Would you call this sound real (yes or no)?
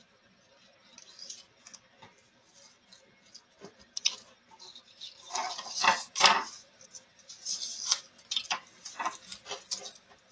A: yes